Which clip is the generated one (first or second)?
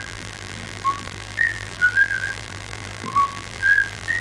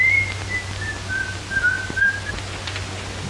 first